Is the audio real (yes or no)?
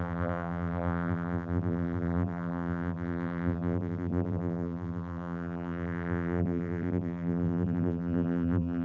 no